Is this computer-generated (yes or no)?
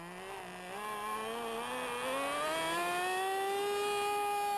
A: no